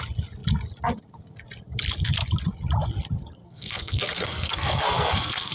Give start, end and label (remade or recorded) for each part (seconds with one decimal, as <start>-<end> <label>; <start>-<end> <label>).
0.0-3.4 recorded; 3.4-5.5 remade